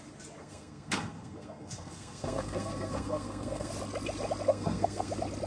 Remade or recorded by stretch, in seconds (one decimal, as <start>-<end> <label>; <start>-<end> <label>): 0.0-0.4 recorded; 0.4-3.7 remade; 3.7-4.5 recorded; 4.5-5.1 remade; 5.1-5.5 recorded